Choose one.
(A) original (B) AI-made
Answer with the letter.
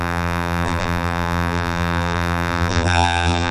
B